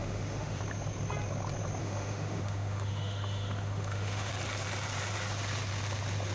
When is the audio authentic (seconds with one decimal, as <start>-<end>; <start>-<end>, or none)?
0.6-1.8; 4.3-6.3